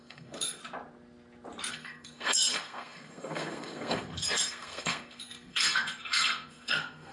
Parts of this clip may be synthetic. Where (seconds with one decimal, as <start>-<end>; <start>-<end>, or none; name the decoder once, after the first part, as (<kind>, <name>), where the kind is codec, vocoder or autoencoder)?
0.0-0.6 (codec, SNAC); 1.7-7.1